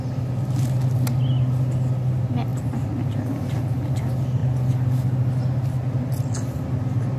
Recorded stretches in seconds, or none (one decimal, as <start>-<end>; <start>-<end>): 0.0-7.2